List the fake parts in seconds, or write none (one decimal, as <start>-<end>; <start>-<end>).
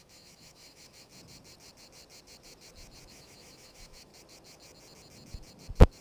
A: 0.0-1.1; 3.1-4.1